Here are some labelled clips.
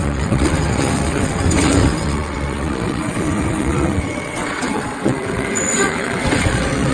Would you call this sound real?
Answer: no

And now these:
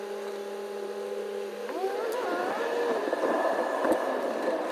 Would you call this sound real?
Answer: yes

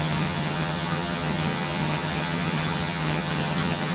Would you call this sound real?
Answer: no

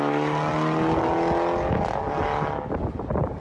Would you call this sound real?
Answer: yes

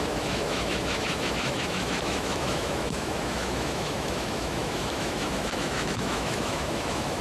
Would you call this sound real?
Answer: no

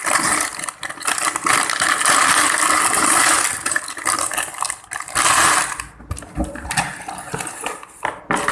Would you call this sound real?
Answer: yes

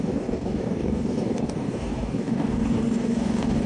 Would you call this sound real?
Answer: no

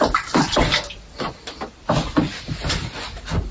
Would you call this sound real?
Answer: yes